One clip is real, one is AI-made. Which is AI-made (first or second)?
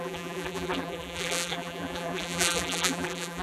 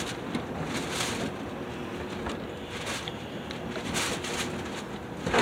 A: first